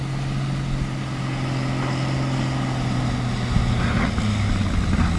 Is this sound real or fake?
real